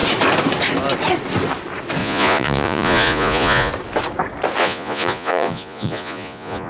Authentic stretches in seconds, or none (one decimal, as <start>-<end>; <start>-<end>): 0.0-2.0; 3.7-4.6